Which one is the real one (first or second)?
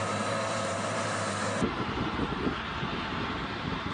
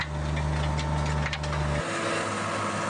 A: second